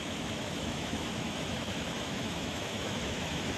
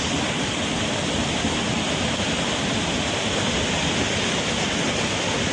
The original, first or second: second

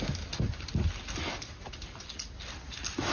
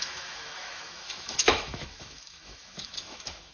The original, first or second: first